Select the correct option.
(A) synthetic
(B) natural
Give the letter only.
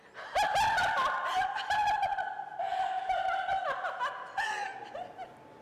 B